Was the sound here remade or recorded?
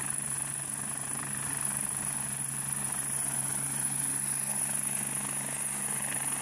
recorded